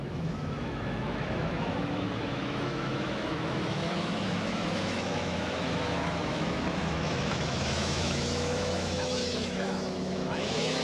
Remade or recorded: remade